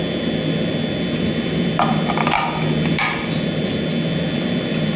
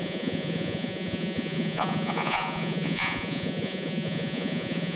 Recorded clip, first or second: first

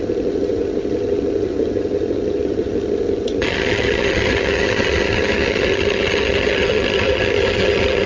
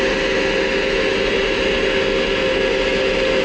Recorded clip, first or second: second